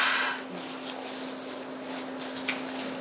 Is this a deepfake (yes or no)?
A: no